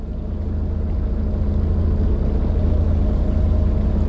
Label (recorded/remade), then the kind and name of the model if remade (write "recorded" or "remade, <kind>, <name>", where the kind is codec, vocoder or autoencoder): recorded